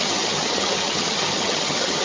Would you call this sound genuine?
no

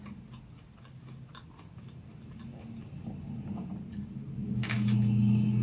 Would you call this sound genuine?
yes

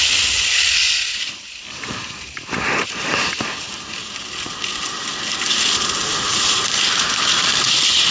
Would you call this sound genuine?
yes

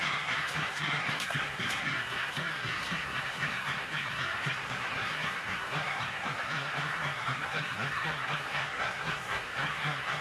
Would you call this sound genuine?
no